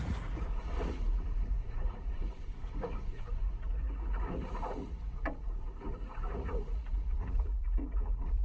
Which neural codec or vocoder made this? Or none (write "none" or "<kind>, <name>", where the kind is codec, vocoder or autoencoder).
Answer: vocoder, Vocos